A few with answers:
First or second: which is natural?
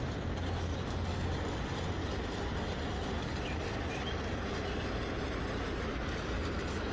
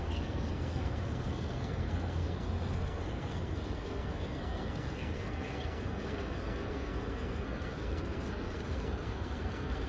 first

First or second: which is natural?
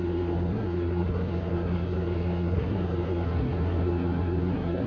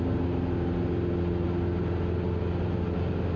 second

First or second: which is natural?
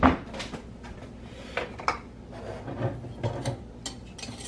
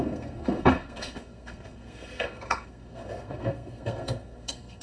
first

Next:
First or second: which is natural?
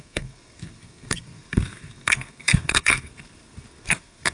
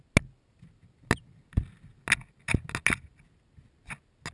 second